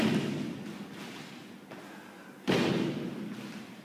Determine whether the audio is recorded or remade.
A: recorded